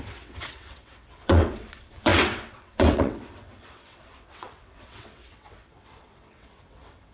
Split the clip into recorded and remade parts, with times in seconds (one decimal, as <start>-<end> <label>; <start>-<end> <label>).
0.0-7.1 remade

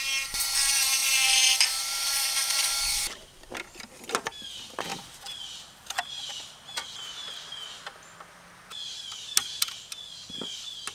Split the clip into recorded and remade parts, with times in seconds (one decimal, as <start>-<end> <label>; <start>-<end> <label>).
0.0-10.9 recorded

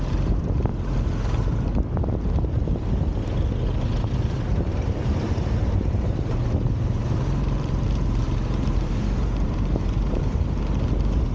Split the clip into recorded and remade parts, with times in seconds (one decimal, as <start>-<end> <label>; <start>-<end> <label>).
0.0-0.7 remade; 0.7-3.8 recorded; 3.8-11.3 remade

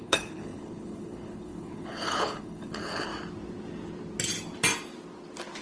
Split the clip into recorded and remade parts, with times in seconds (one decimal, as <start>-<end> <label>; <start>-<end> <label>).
0.0-3.1 remade; 3.1-5.6 recorded

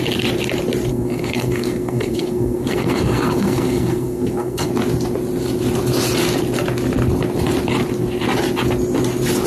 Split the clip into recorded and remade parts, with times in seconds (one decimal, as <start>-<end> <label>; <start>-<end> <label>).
0.0-0.9 recorded; 0.9-4.7 remade; 4.7-9.5 recorded